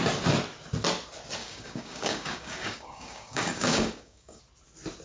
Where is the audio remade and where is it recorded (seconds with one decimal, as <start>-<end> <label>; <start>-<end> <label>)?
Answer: 0.0-1.4 recorded; 1.4-4.4 remade; 4.4-5.0 recorded